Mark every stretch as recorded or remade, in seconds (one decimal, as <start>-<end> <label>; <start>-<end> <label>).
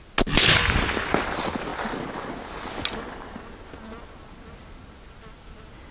0.0-5.9 recorded